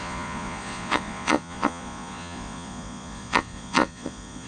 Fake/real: fake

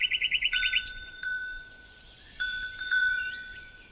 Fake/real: fake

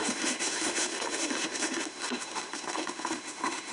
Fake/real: fake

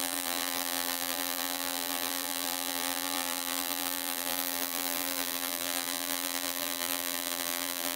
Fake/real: fake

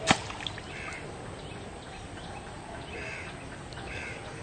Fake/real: real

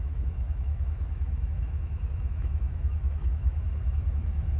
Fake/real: fake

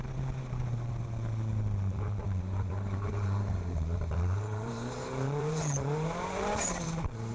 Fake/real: fake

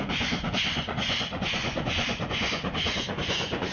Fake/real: fake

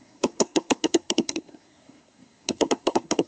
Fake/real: fake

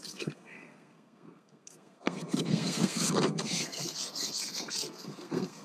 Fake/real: fake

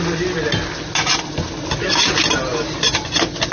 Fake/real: real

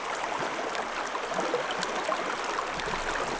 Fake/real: real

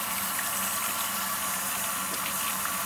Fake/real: real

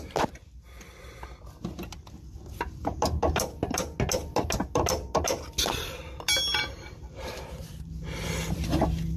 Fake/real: real